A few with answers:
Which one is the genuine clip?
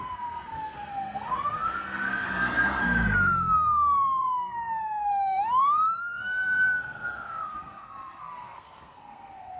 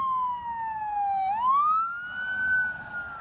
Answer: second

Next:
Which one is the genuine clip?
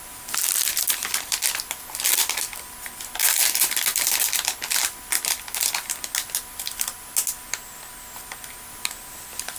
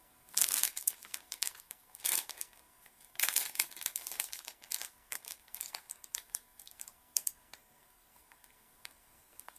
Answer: first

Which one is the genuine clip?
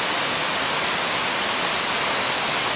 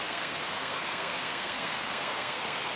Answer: first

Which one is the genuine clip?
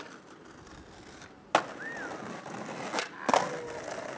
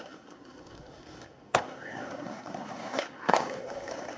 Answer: first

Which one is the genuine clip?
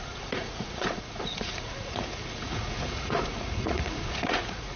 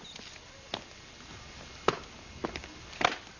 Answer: second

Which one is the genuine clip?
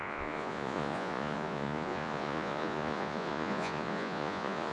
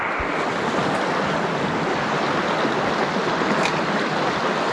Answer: second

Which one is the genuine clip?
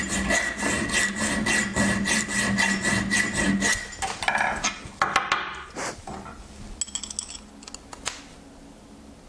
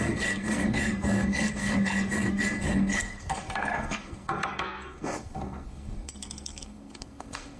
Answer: first